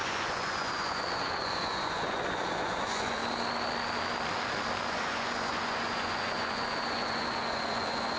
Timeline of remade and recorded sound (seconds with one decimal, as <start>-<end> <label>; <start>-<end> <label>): 0.0-3.2 remade; 3.2-4.9 recorded; 4.9-8.2 remade